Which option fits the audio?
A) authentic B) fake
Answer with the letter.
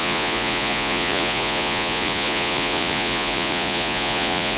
B